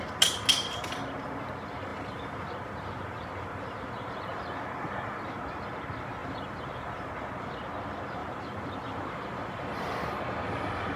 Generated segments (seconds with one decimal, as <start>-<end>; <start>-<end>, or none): 1.9-5.4; 6.2-7.1; 8.2-10.1